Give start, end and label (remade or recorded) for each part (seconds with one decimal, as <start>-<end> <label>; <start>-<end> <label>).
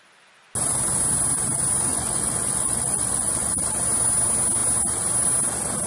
0.0-1.9 recorded; 1.9-3.6 remade; 3.6-5.9 recorded